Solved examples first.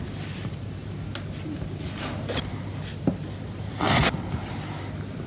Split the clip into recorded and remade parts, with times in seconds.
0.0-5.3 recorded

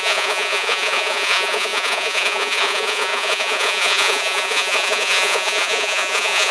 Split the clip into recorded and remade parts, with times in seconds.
0.0-6.5 remade